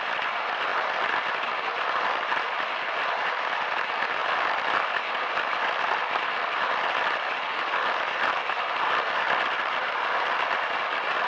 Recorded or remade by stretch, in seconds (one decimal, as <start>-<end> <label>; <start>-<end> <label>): 0.0-11.3 recorded